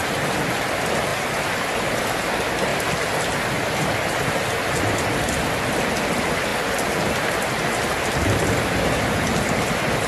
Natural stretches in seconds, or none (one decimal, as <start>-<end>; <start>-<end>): 0.0-10.1